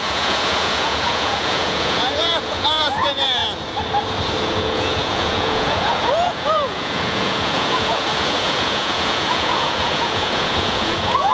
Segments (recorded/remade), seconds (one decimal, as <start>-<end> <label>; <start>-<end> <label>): 0.0-3.4 remade; 3.4-4.4 recorded; 4.4-11.3 remade